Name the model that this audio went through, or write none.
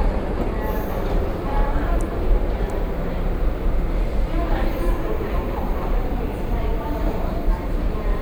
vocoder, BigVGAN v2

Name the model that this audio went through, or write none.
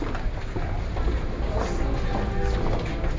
none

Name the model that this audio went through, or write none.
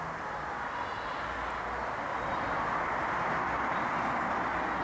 none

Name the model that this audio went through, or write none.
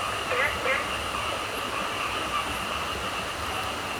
none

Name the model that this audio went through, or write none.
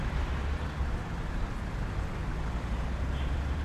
none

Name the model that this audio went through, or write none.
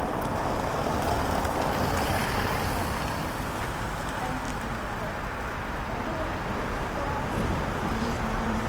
none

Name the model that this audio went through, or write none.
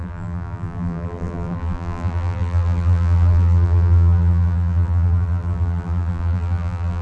vocoder, BigVGAN v2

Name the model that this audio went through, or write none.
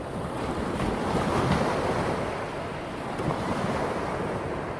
none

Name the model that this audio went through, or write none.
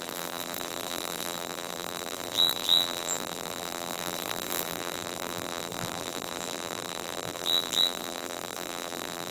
vocoder, BigVGAN v2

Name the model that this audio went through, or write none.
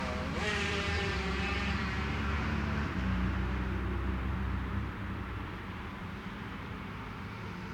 vocoder, BigVGAN v2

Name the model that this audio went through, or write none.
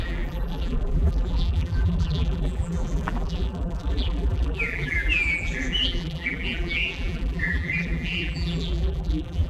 vocoder, BigVGAN v2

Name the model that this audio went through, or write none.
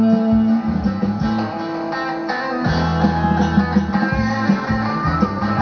none